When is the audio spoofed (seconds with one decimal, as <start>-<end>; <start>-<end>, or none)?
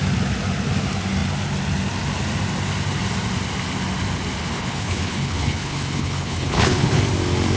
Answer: 4.4-7.0